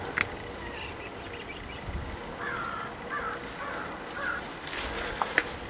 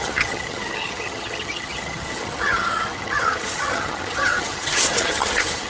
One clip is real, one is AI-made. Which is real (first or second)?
first